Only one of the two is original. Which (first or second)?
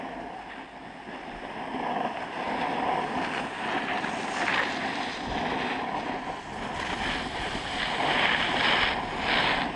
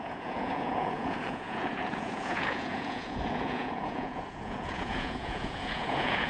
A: first